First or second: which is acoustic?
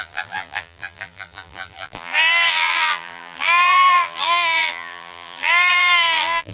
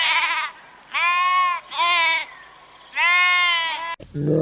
second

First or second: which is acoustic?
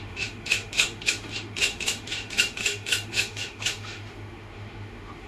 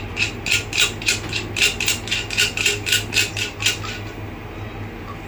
second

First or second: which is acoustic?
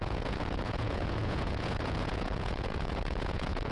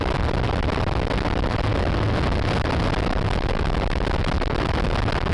second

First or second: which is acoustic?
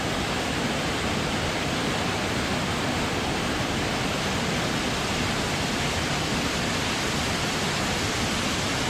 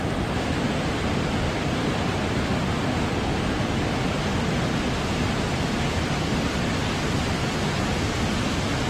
second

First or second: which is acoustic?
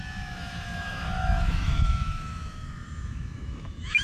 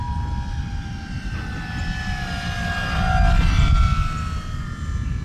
second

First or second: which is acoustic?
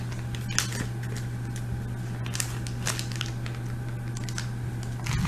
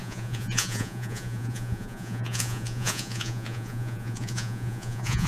first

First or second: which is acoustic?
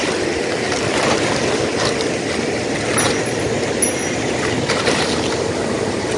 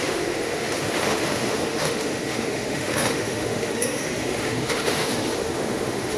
first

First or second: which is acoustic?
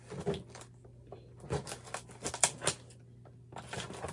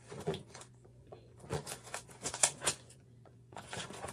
first